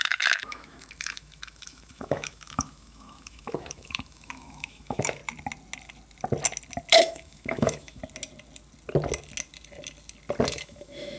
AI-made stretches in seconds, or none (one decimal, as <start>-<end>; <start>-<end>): 0.0-5.2; 6.9-8.0; 10.5-11.2